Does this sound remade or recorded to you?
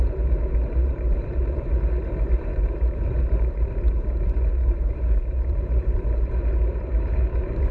remade